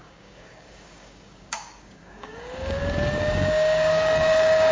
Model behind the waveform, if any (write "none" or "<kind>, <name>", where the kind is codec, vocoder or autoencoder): codec, DAC